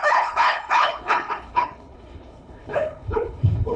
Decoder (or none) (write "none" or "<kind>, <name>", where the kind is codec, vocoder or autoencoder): codec, HILCodec